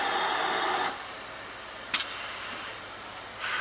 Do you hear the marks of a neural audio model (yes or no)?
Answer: no